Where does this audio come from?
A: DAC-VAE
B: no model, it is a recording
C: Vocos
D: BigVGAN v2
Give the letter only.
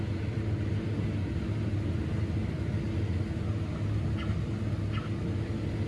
B